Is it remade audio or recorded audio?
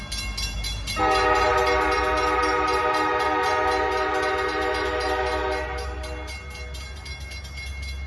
recorded